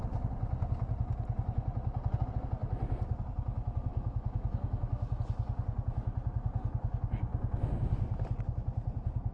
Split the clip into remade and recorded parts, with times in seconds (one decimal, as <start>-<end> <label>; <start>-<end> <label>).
0.0-3.9 recorded; 3.9-5.2 remade; 5.2-9.3 recorded